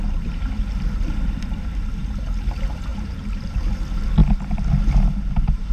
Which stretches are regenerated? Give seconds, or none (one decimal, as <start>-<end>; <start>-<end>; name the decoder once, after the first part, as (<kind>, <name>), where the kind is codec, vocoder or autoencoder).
2.9-3.7 (vocoder, BigVGAN v2)